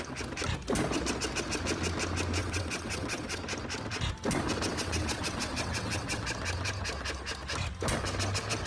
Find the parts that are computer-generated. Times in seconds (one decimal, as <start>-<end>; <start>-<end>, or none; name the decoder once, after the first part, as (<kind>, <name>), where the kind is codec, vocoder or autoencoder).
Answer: 2.4-3.4 (vocoder, WaveNeXt); 4.7-6.2